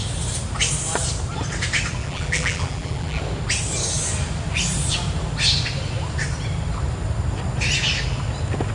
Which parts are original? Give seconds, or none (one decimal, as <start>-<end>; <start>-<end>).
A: 0.0-2.0; 3.2-8.7